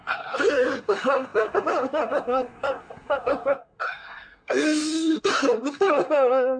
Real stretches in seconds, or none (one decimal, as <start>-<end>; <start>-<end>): none